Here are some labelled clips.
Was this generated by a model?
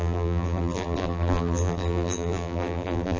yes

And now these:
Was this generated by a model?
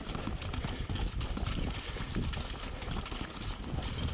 no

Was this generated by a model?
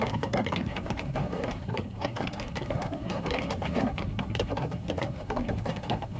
yes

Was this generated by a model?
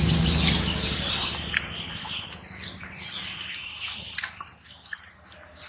no